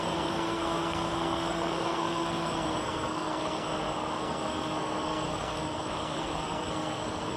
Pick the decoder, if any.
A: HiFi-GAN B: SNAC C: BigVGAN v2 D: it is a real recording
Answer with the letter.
B